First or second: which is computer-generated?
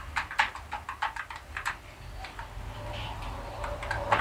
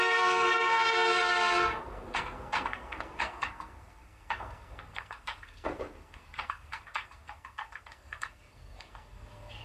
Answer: second